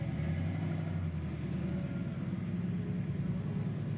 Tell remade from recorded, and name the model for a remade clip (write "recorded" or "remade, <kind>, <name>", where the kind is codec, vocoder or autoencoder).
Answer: recorded